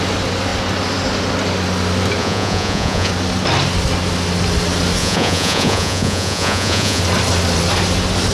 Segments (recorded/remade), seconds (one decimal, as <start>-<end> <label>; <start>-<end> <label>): 0.0-2.2 recorded; 2.2-3.1 remade; 3.1-5.0 recorded; 5.0-7.0 remade; 7.0-8.3 recorded